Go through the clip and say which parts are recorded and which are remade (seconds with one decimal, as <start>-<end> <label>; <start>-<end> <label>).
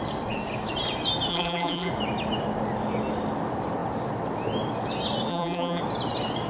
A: 0.0-1.3 recorded; 1.3-1.9 remade; 1.9-5.3 recorded; 5.3-5.8 remade; 5.8-6.5 recorded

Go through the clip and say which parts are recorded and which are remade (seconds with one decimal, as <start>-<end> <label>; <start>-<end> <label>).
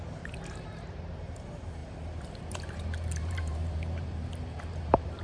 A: 0.0-5.2 remade